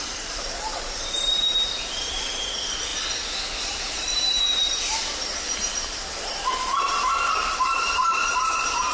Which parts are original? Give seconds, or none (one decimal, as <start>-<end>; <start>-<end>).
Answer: 2.9-3.6